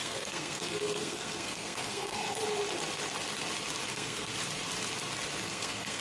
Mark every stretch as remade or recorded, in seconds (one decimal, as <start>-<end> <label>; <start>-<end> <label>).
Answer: 0.0-2.4 remade; 2.4-3.9 recorded; 3.9-4.3 remade; 4.3-5.4 recorded; 5.4-6.0 remade